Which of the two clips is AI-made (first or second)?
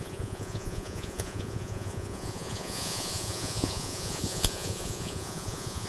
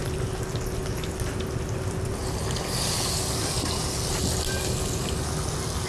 first